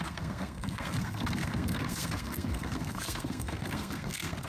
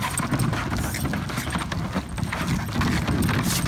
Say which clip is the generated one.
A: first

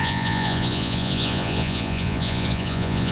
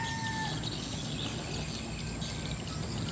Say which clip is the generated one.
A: first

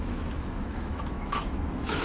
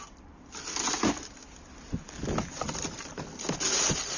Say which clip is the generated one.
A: first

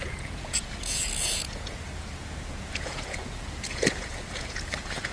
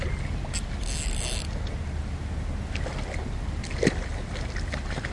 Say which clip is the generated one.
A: first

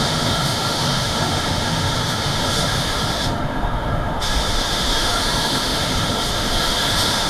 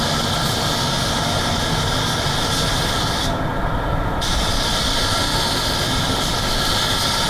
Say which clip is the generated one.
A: first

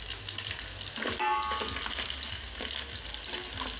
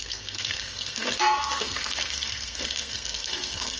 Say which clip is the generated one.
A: second